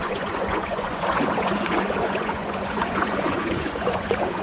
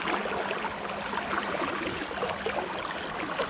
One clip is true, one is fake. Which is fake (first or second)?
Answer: first